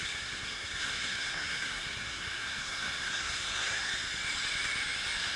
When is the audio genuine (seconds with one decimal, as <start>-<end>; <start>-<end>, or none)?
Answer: 3.9-5.4